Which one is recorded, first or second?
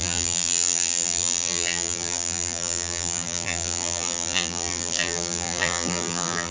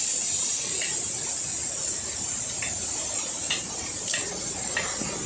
second